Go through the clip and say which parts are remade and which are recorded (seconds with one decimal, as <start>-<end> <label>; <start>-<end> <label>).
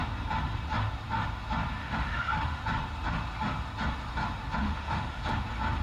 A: 0.0-1.8 recorded; 1.8-2.6 remade; 2.6-4.6 recorded; 4.6-5.2 remade; 5.2-5.8 recorded